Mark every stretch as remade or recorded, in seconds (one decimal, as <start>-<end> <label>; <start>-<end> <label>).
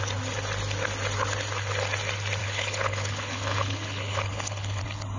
0.0-2.4 recorded; 2.4-4.8 remade; 4.8-5.2 recorded